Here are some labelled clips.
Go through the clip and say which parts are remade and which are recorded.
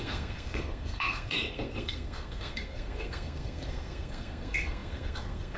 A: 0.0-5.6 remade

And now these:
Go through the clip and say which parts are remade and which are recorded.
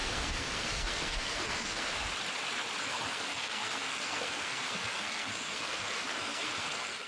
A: 0.0-1.9 remade; 1.9-2.8 recorded; 2.8-7.1 remade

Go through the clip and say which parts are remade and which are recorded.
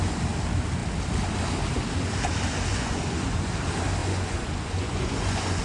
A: 0.0-2.7 recorded; 2.7-3.5 remade; 3.5-4.0 recorded; 4.0-5.6 remade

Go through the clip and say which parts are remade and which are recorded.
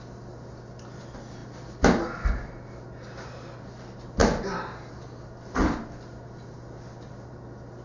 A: 0.0-7.8 recorded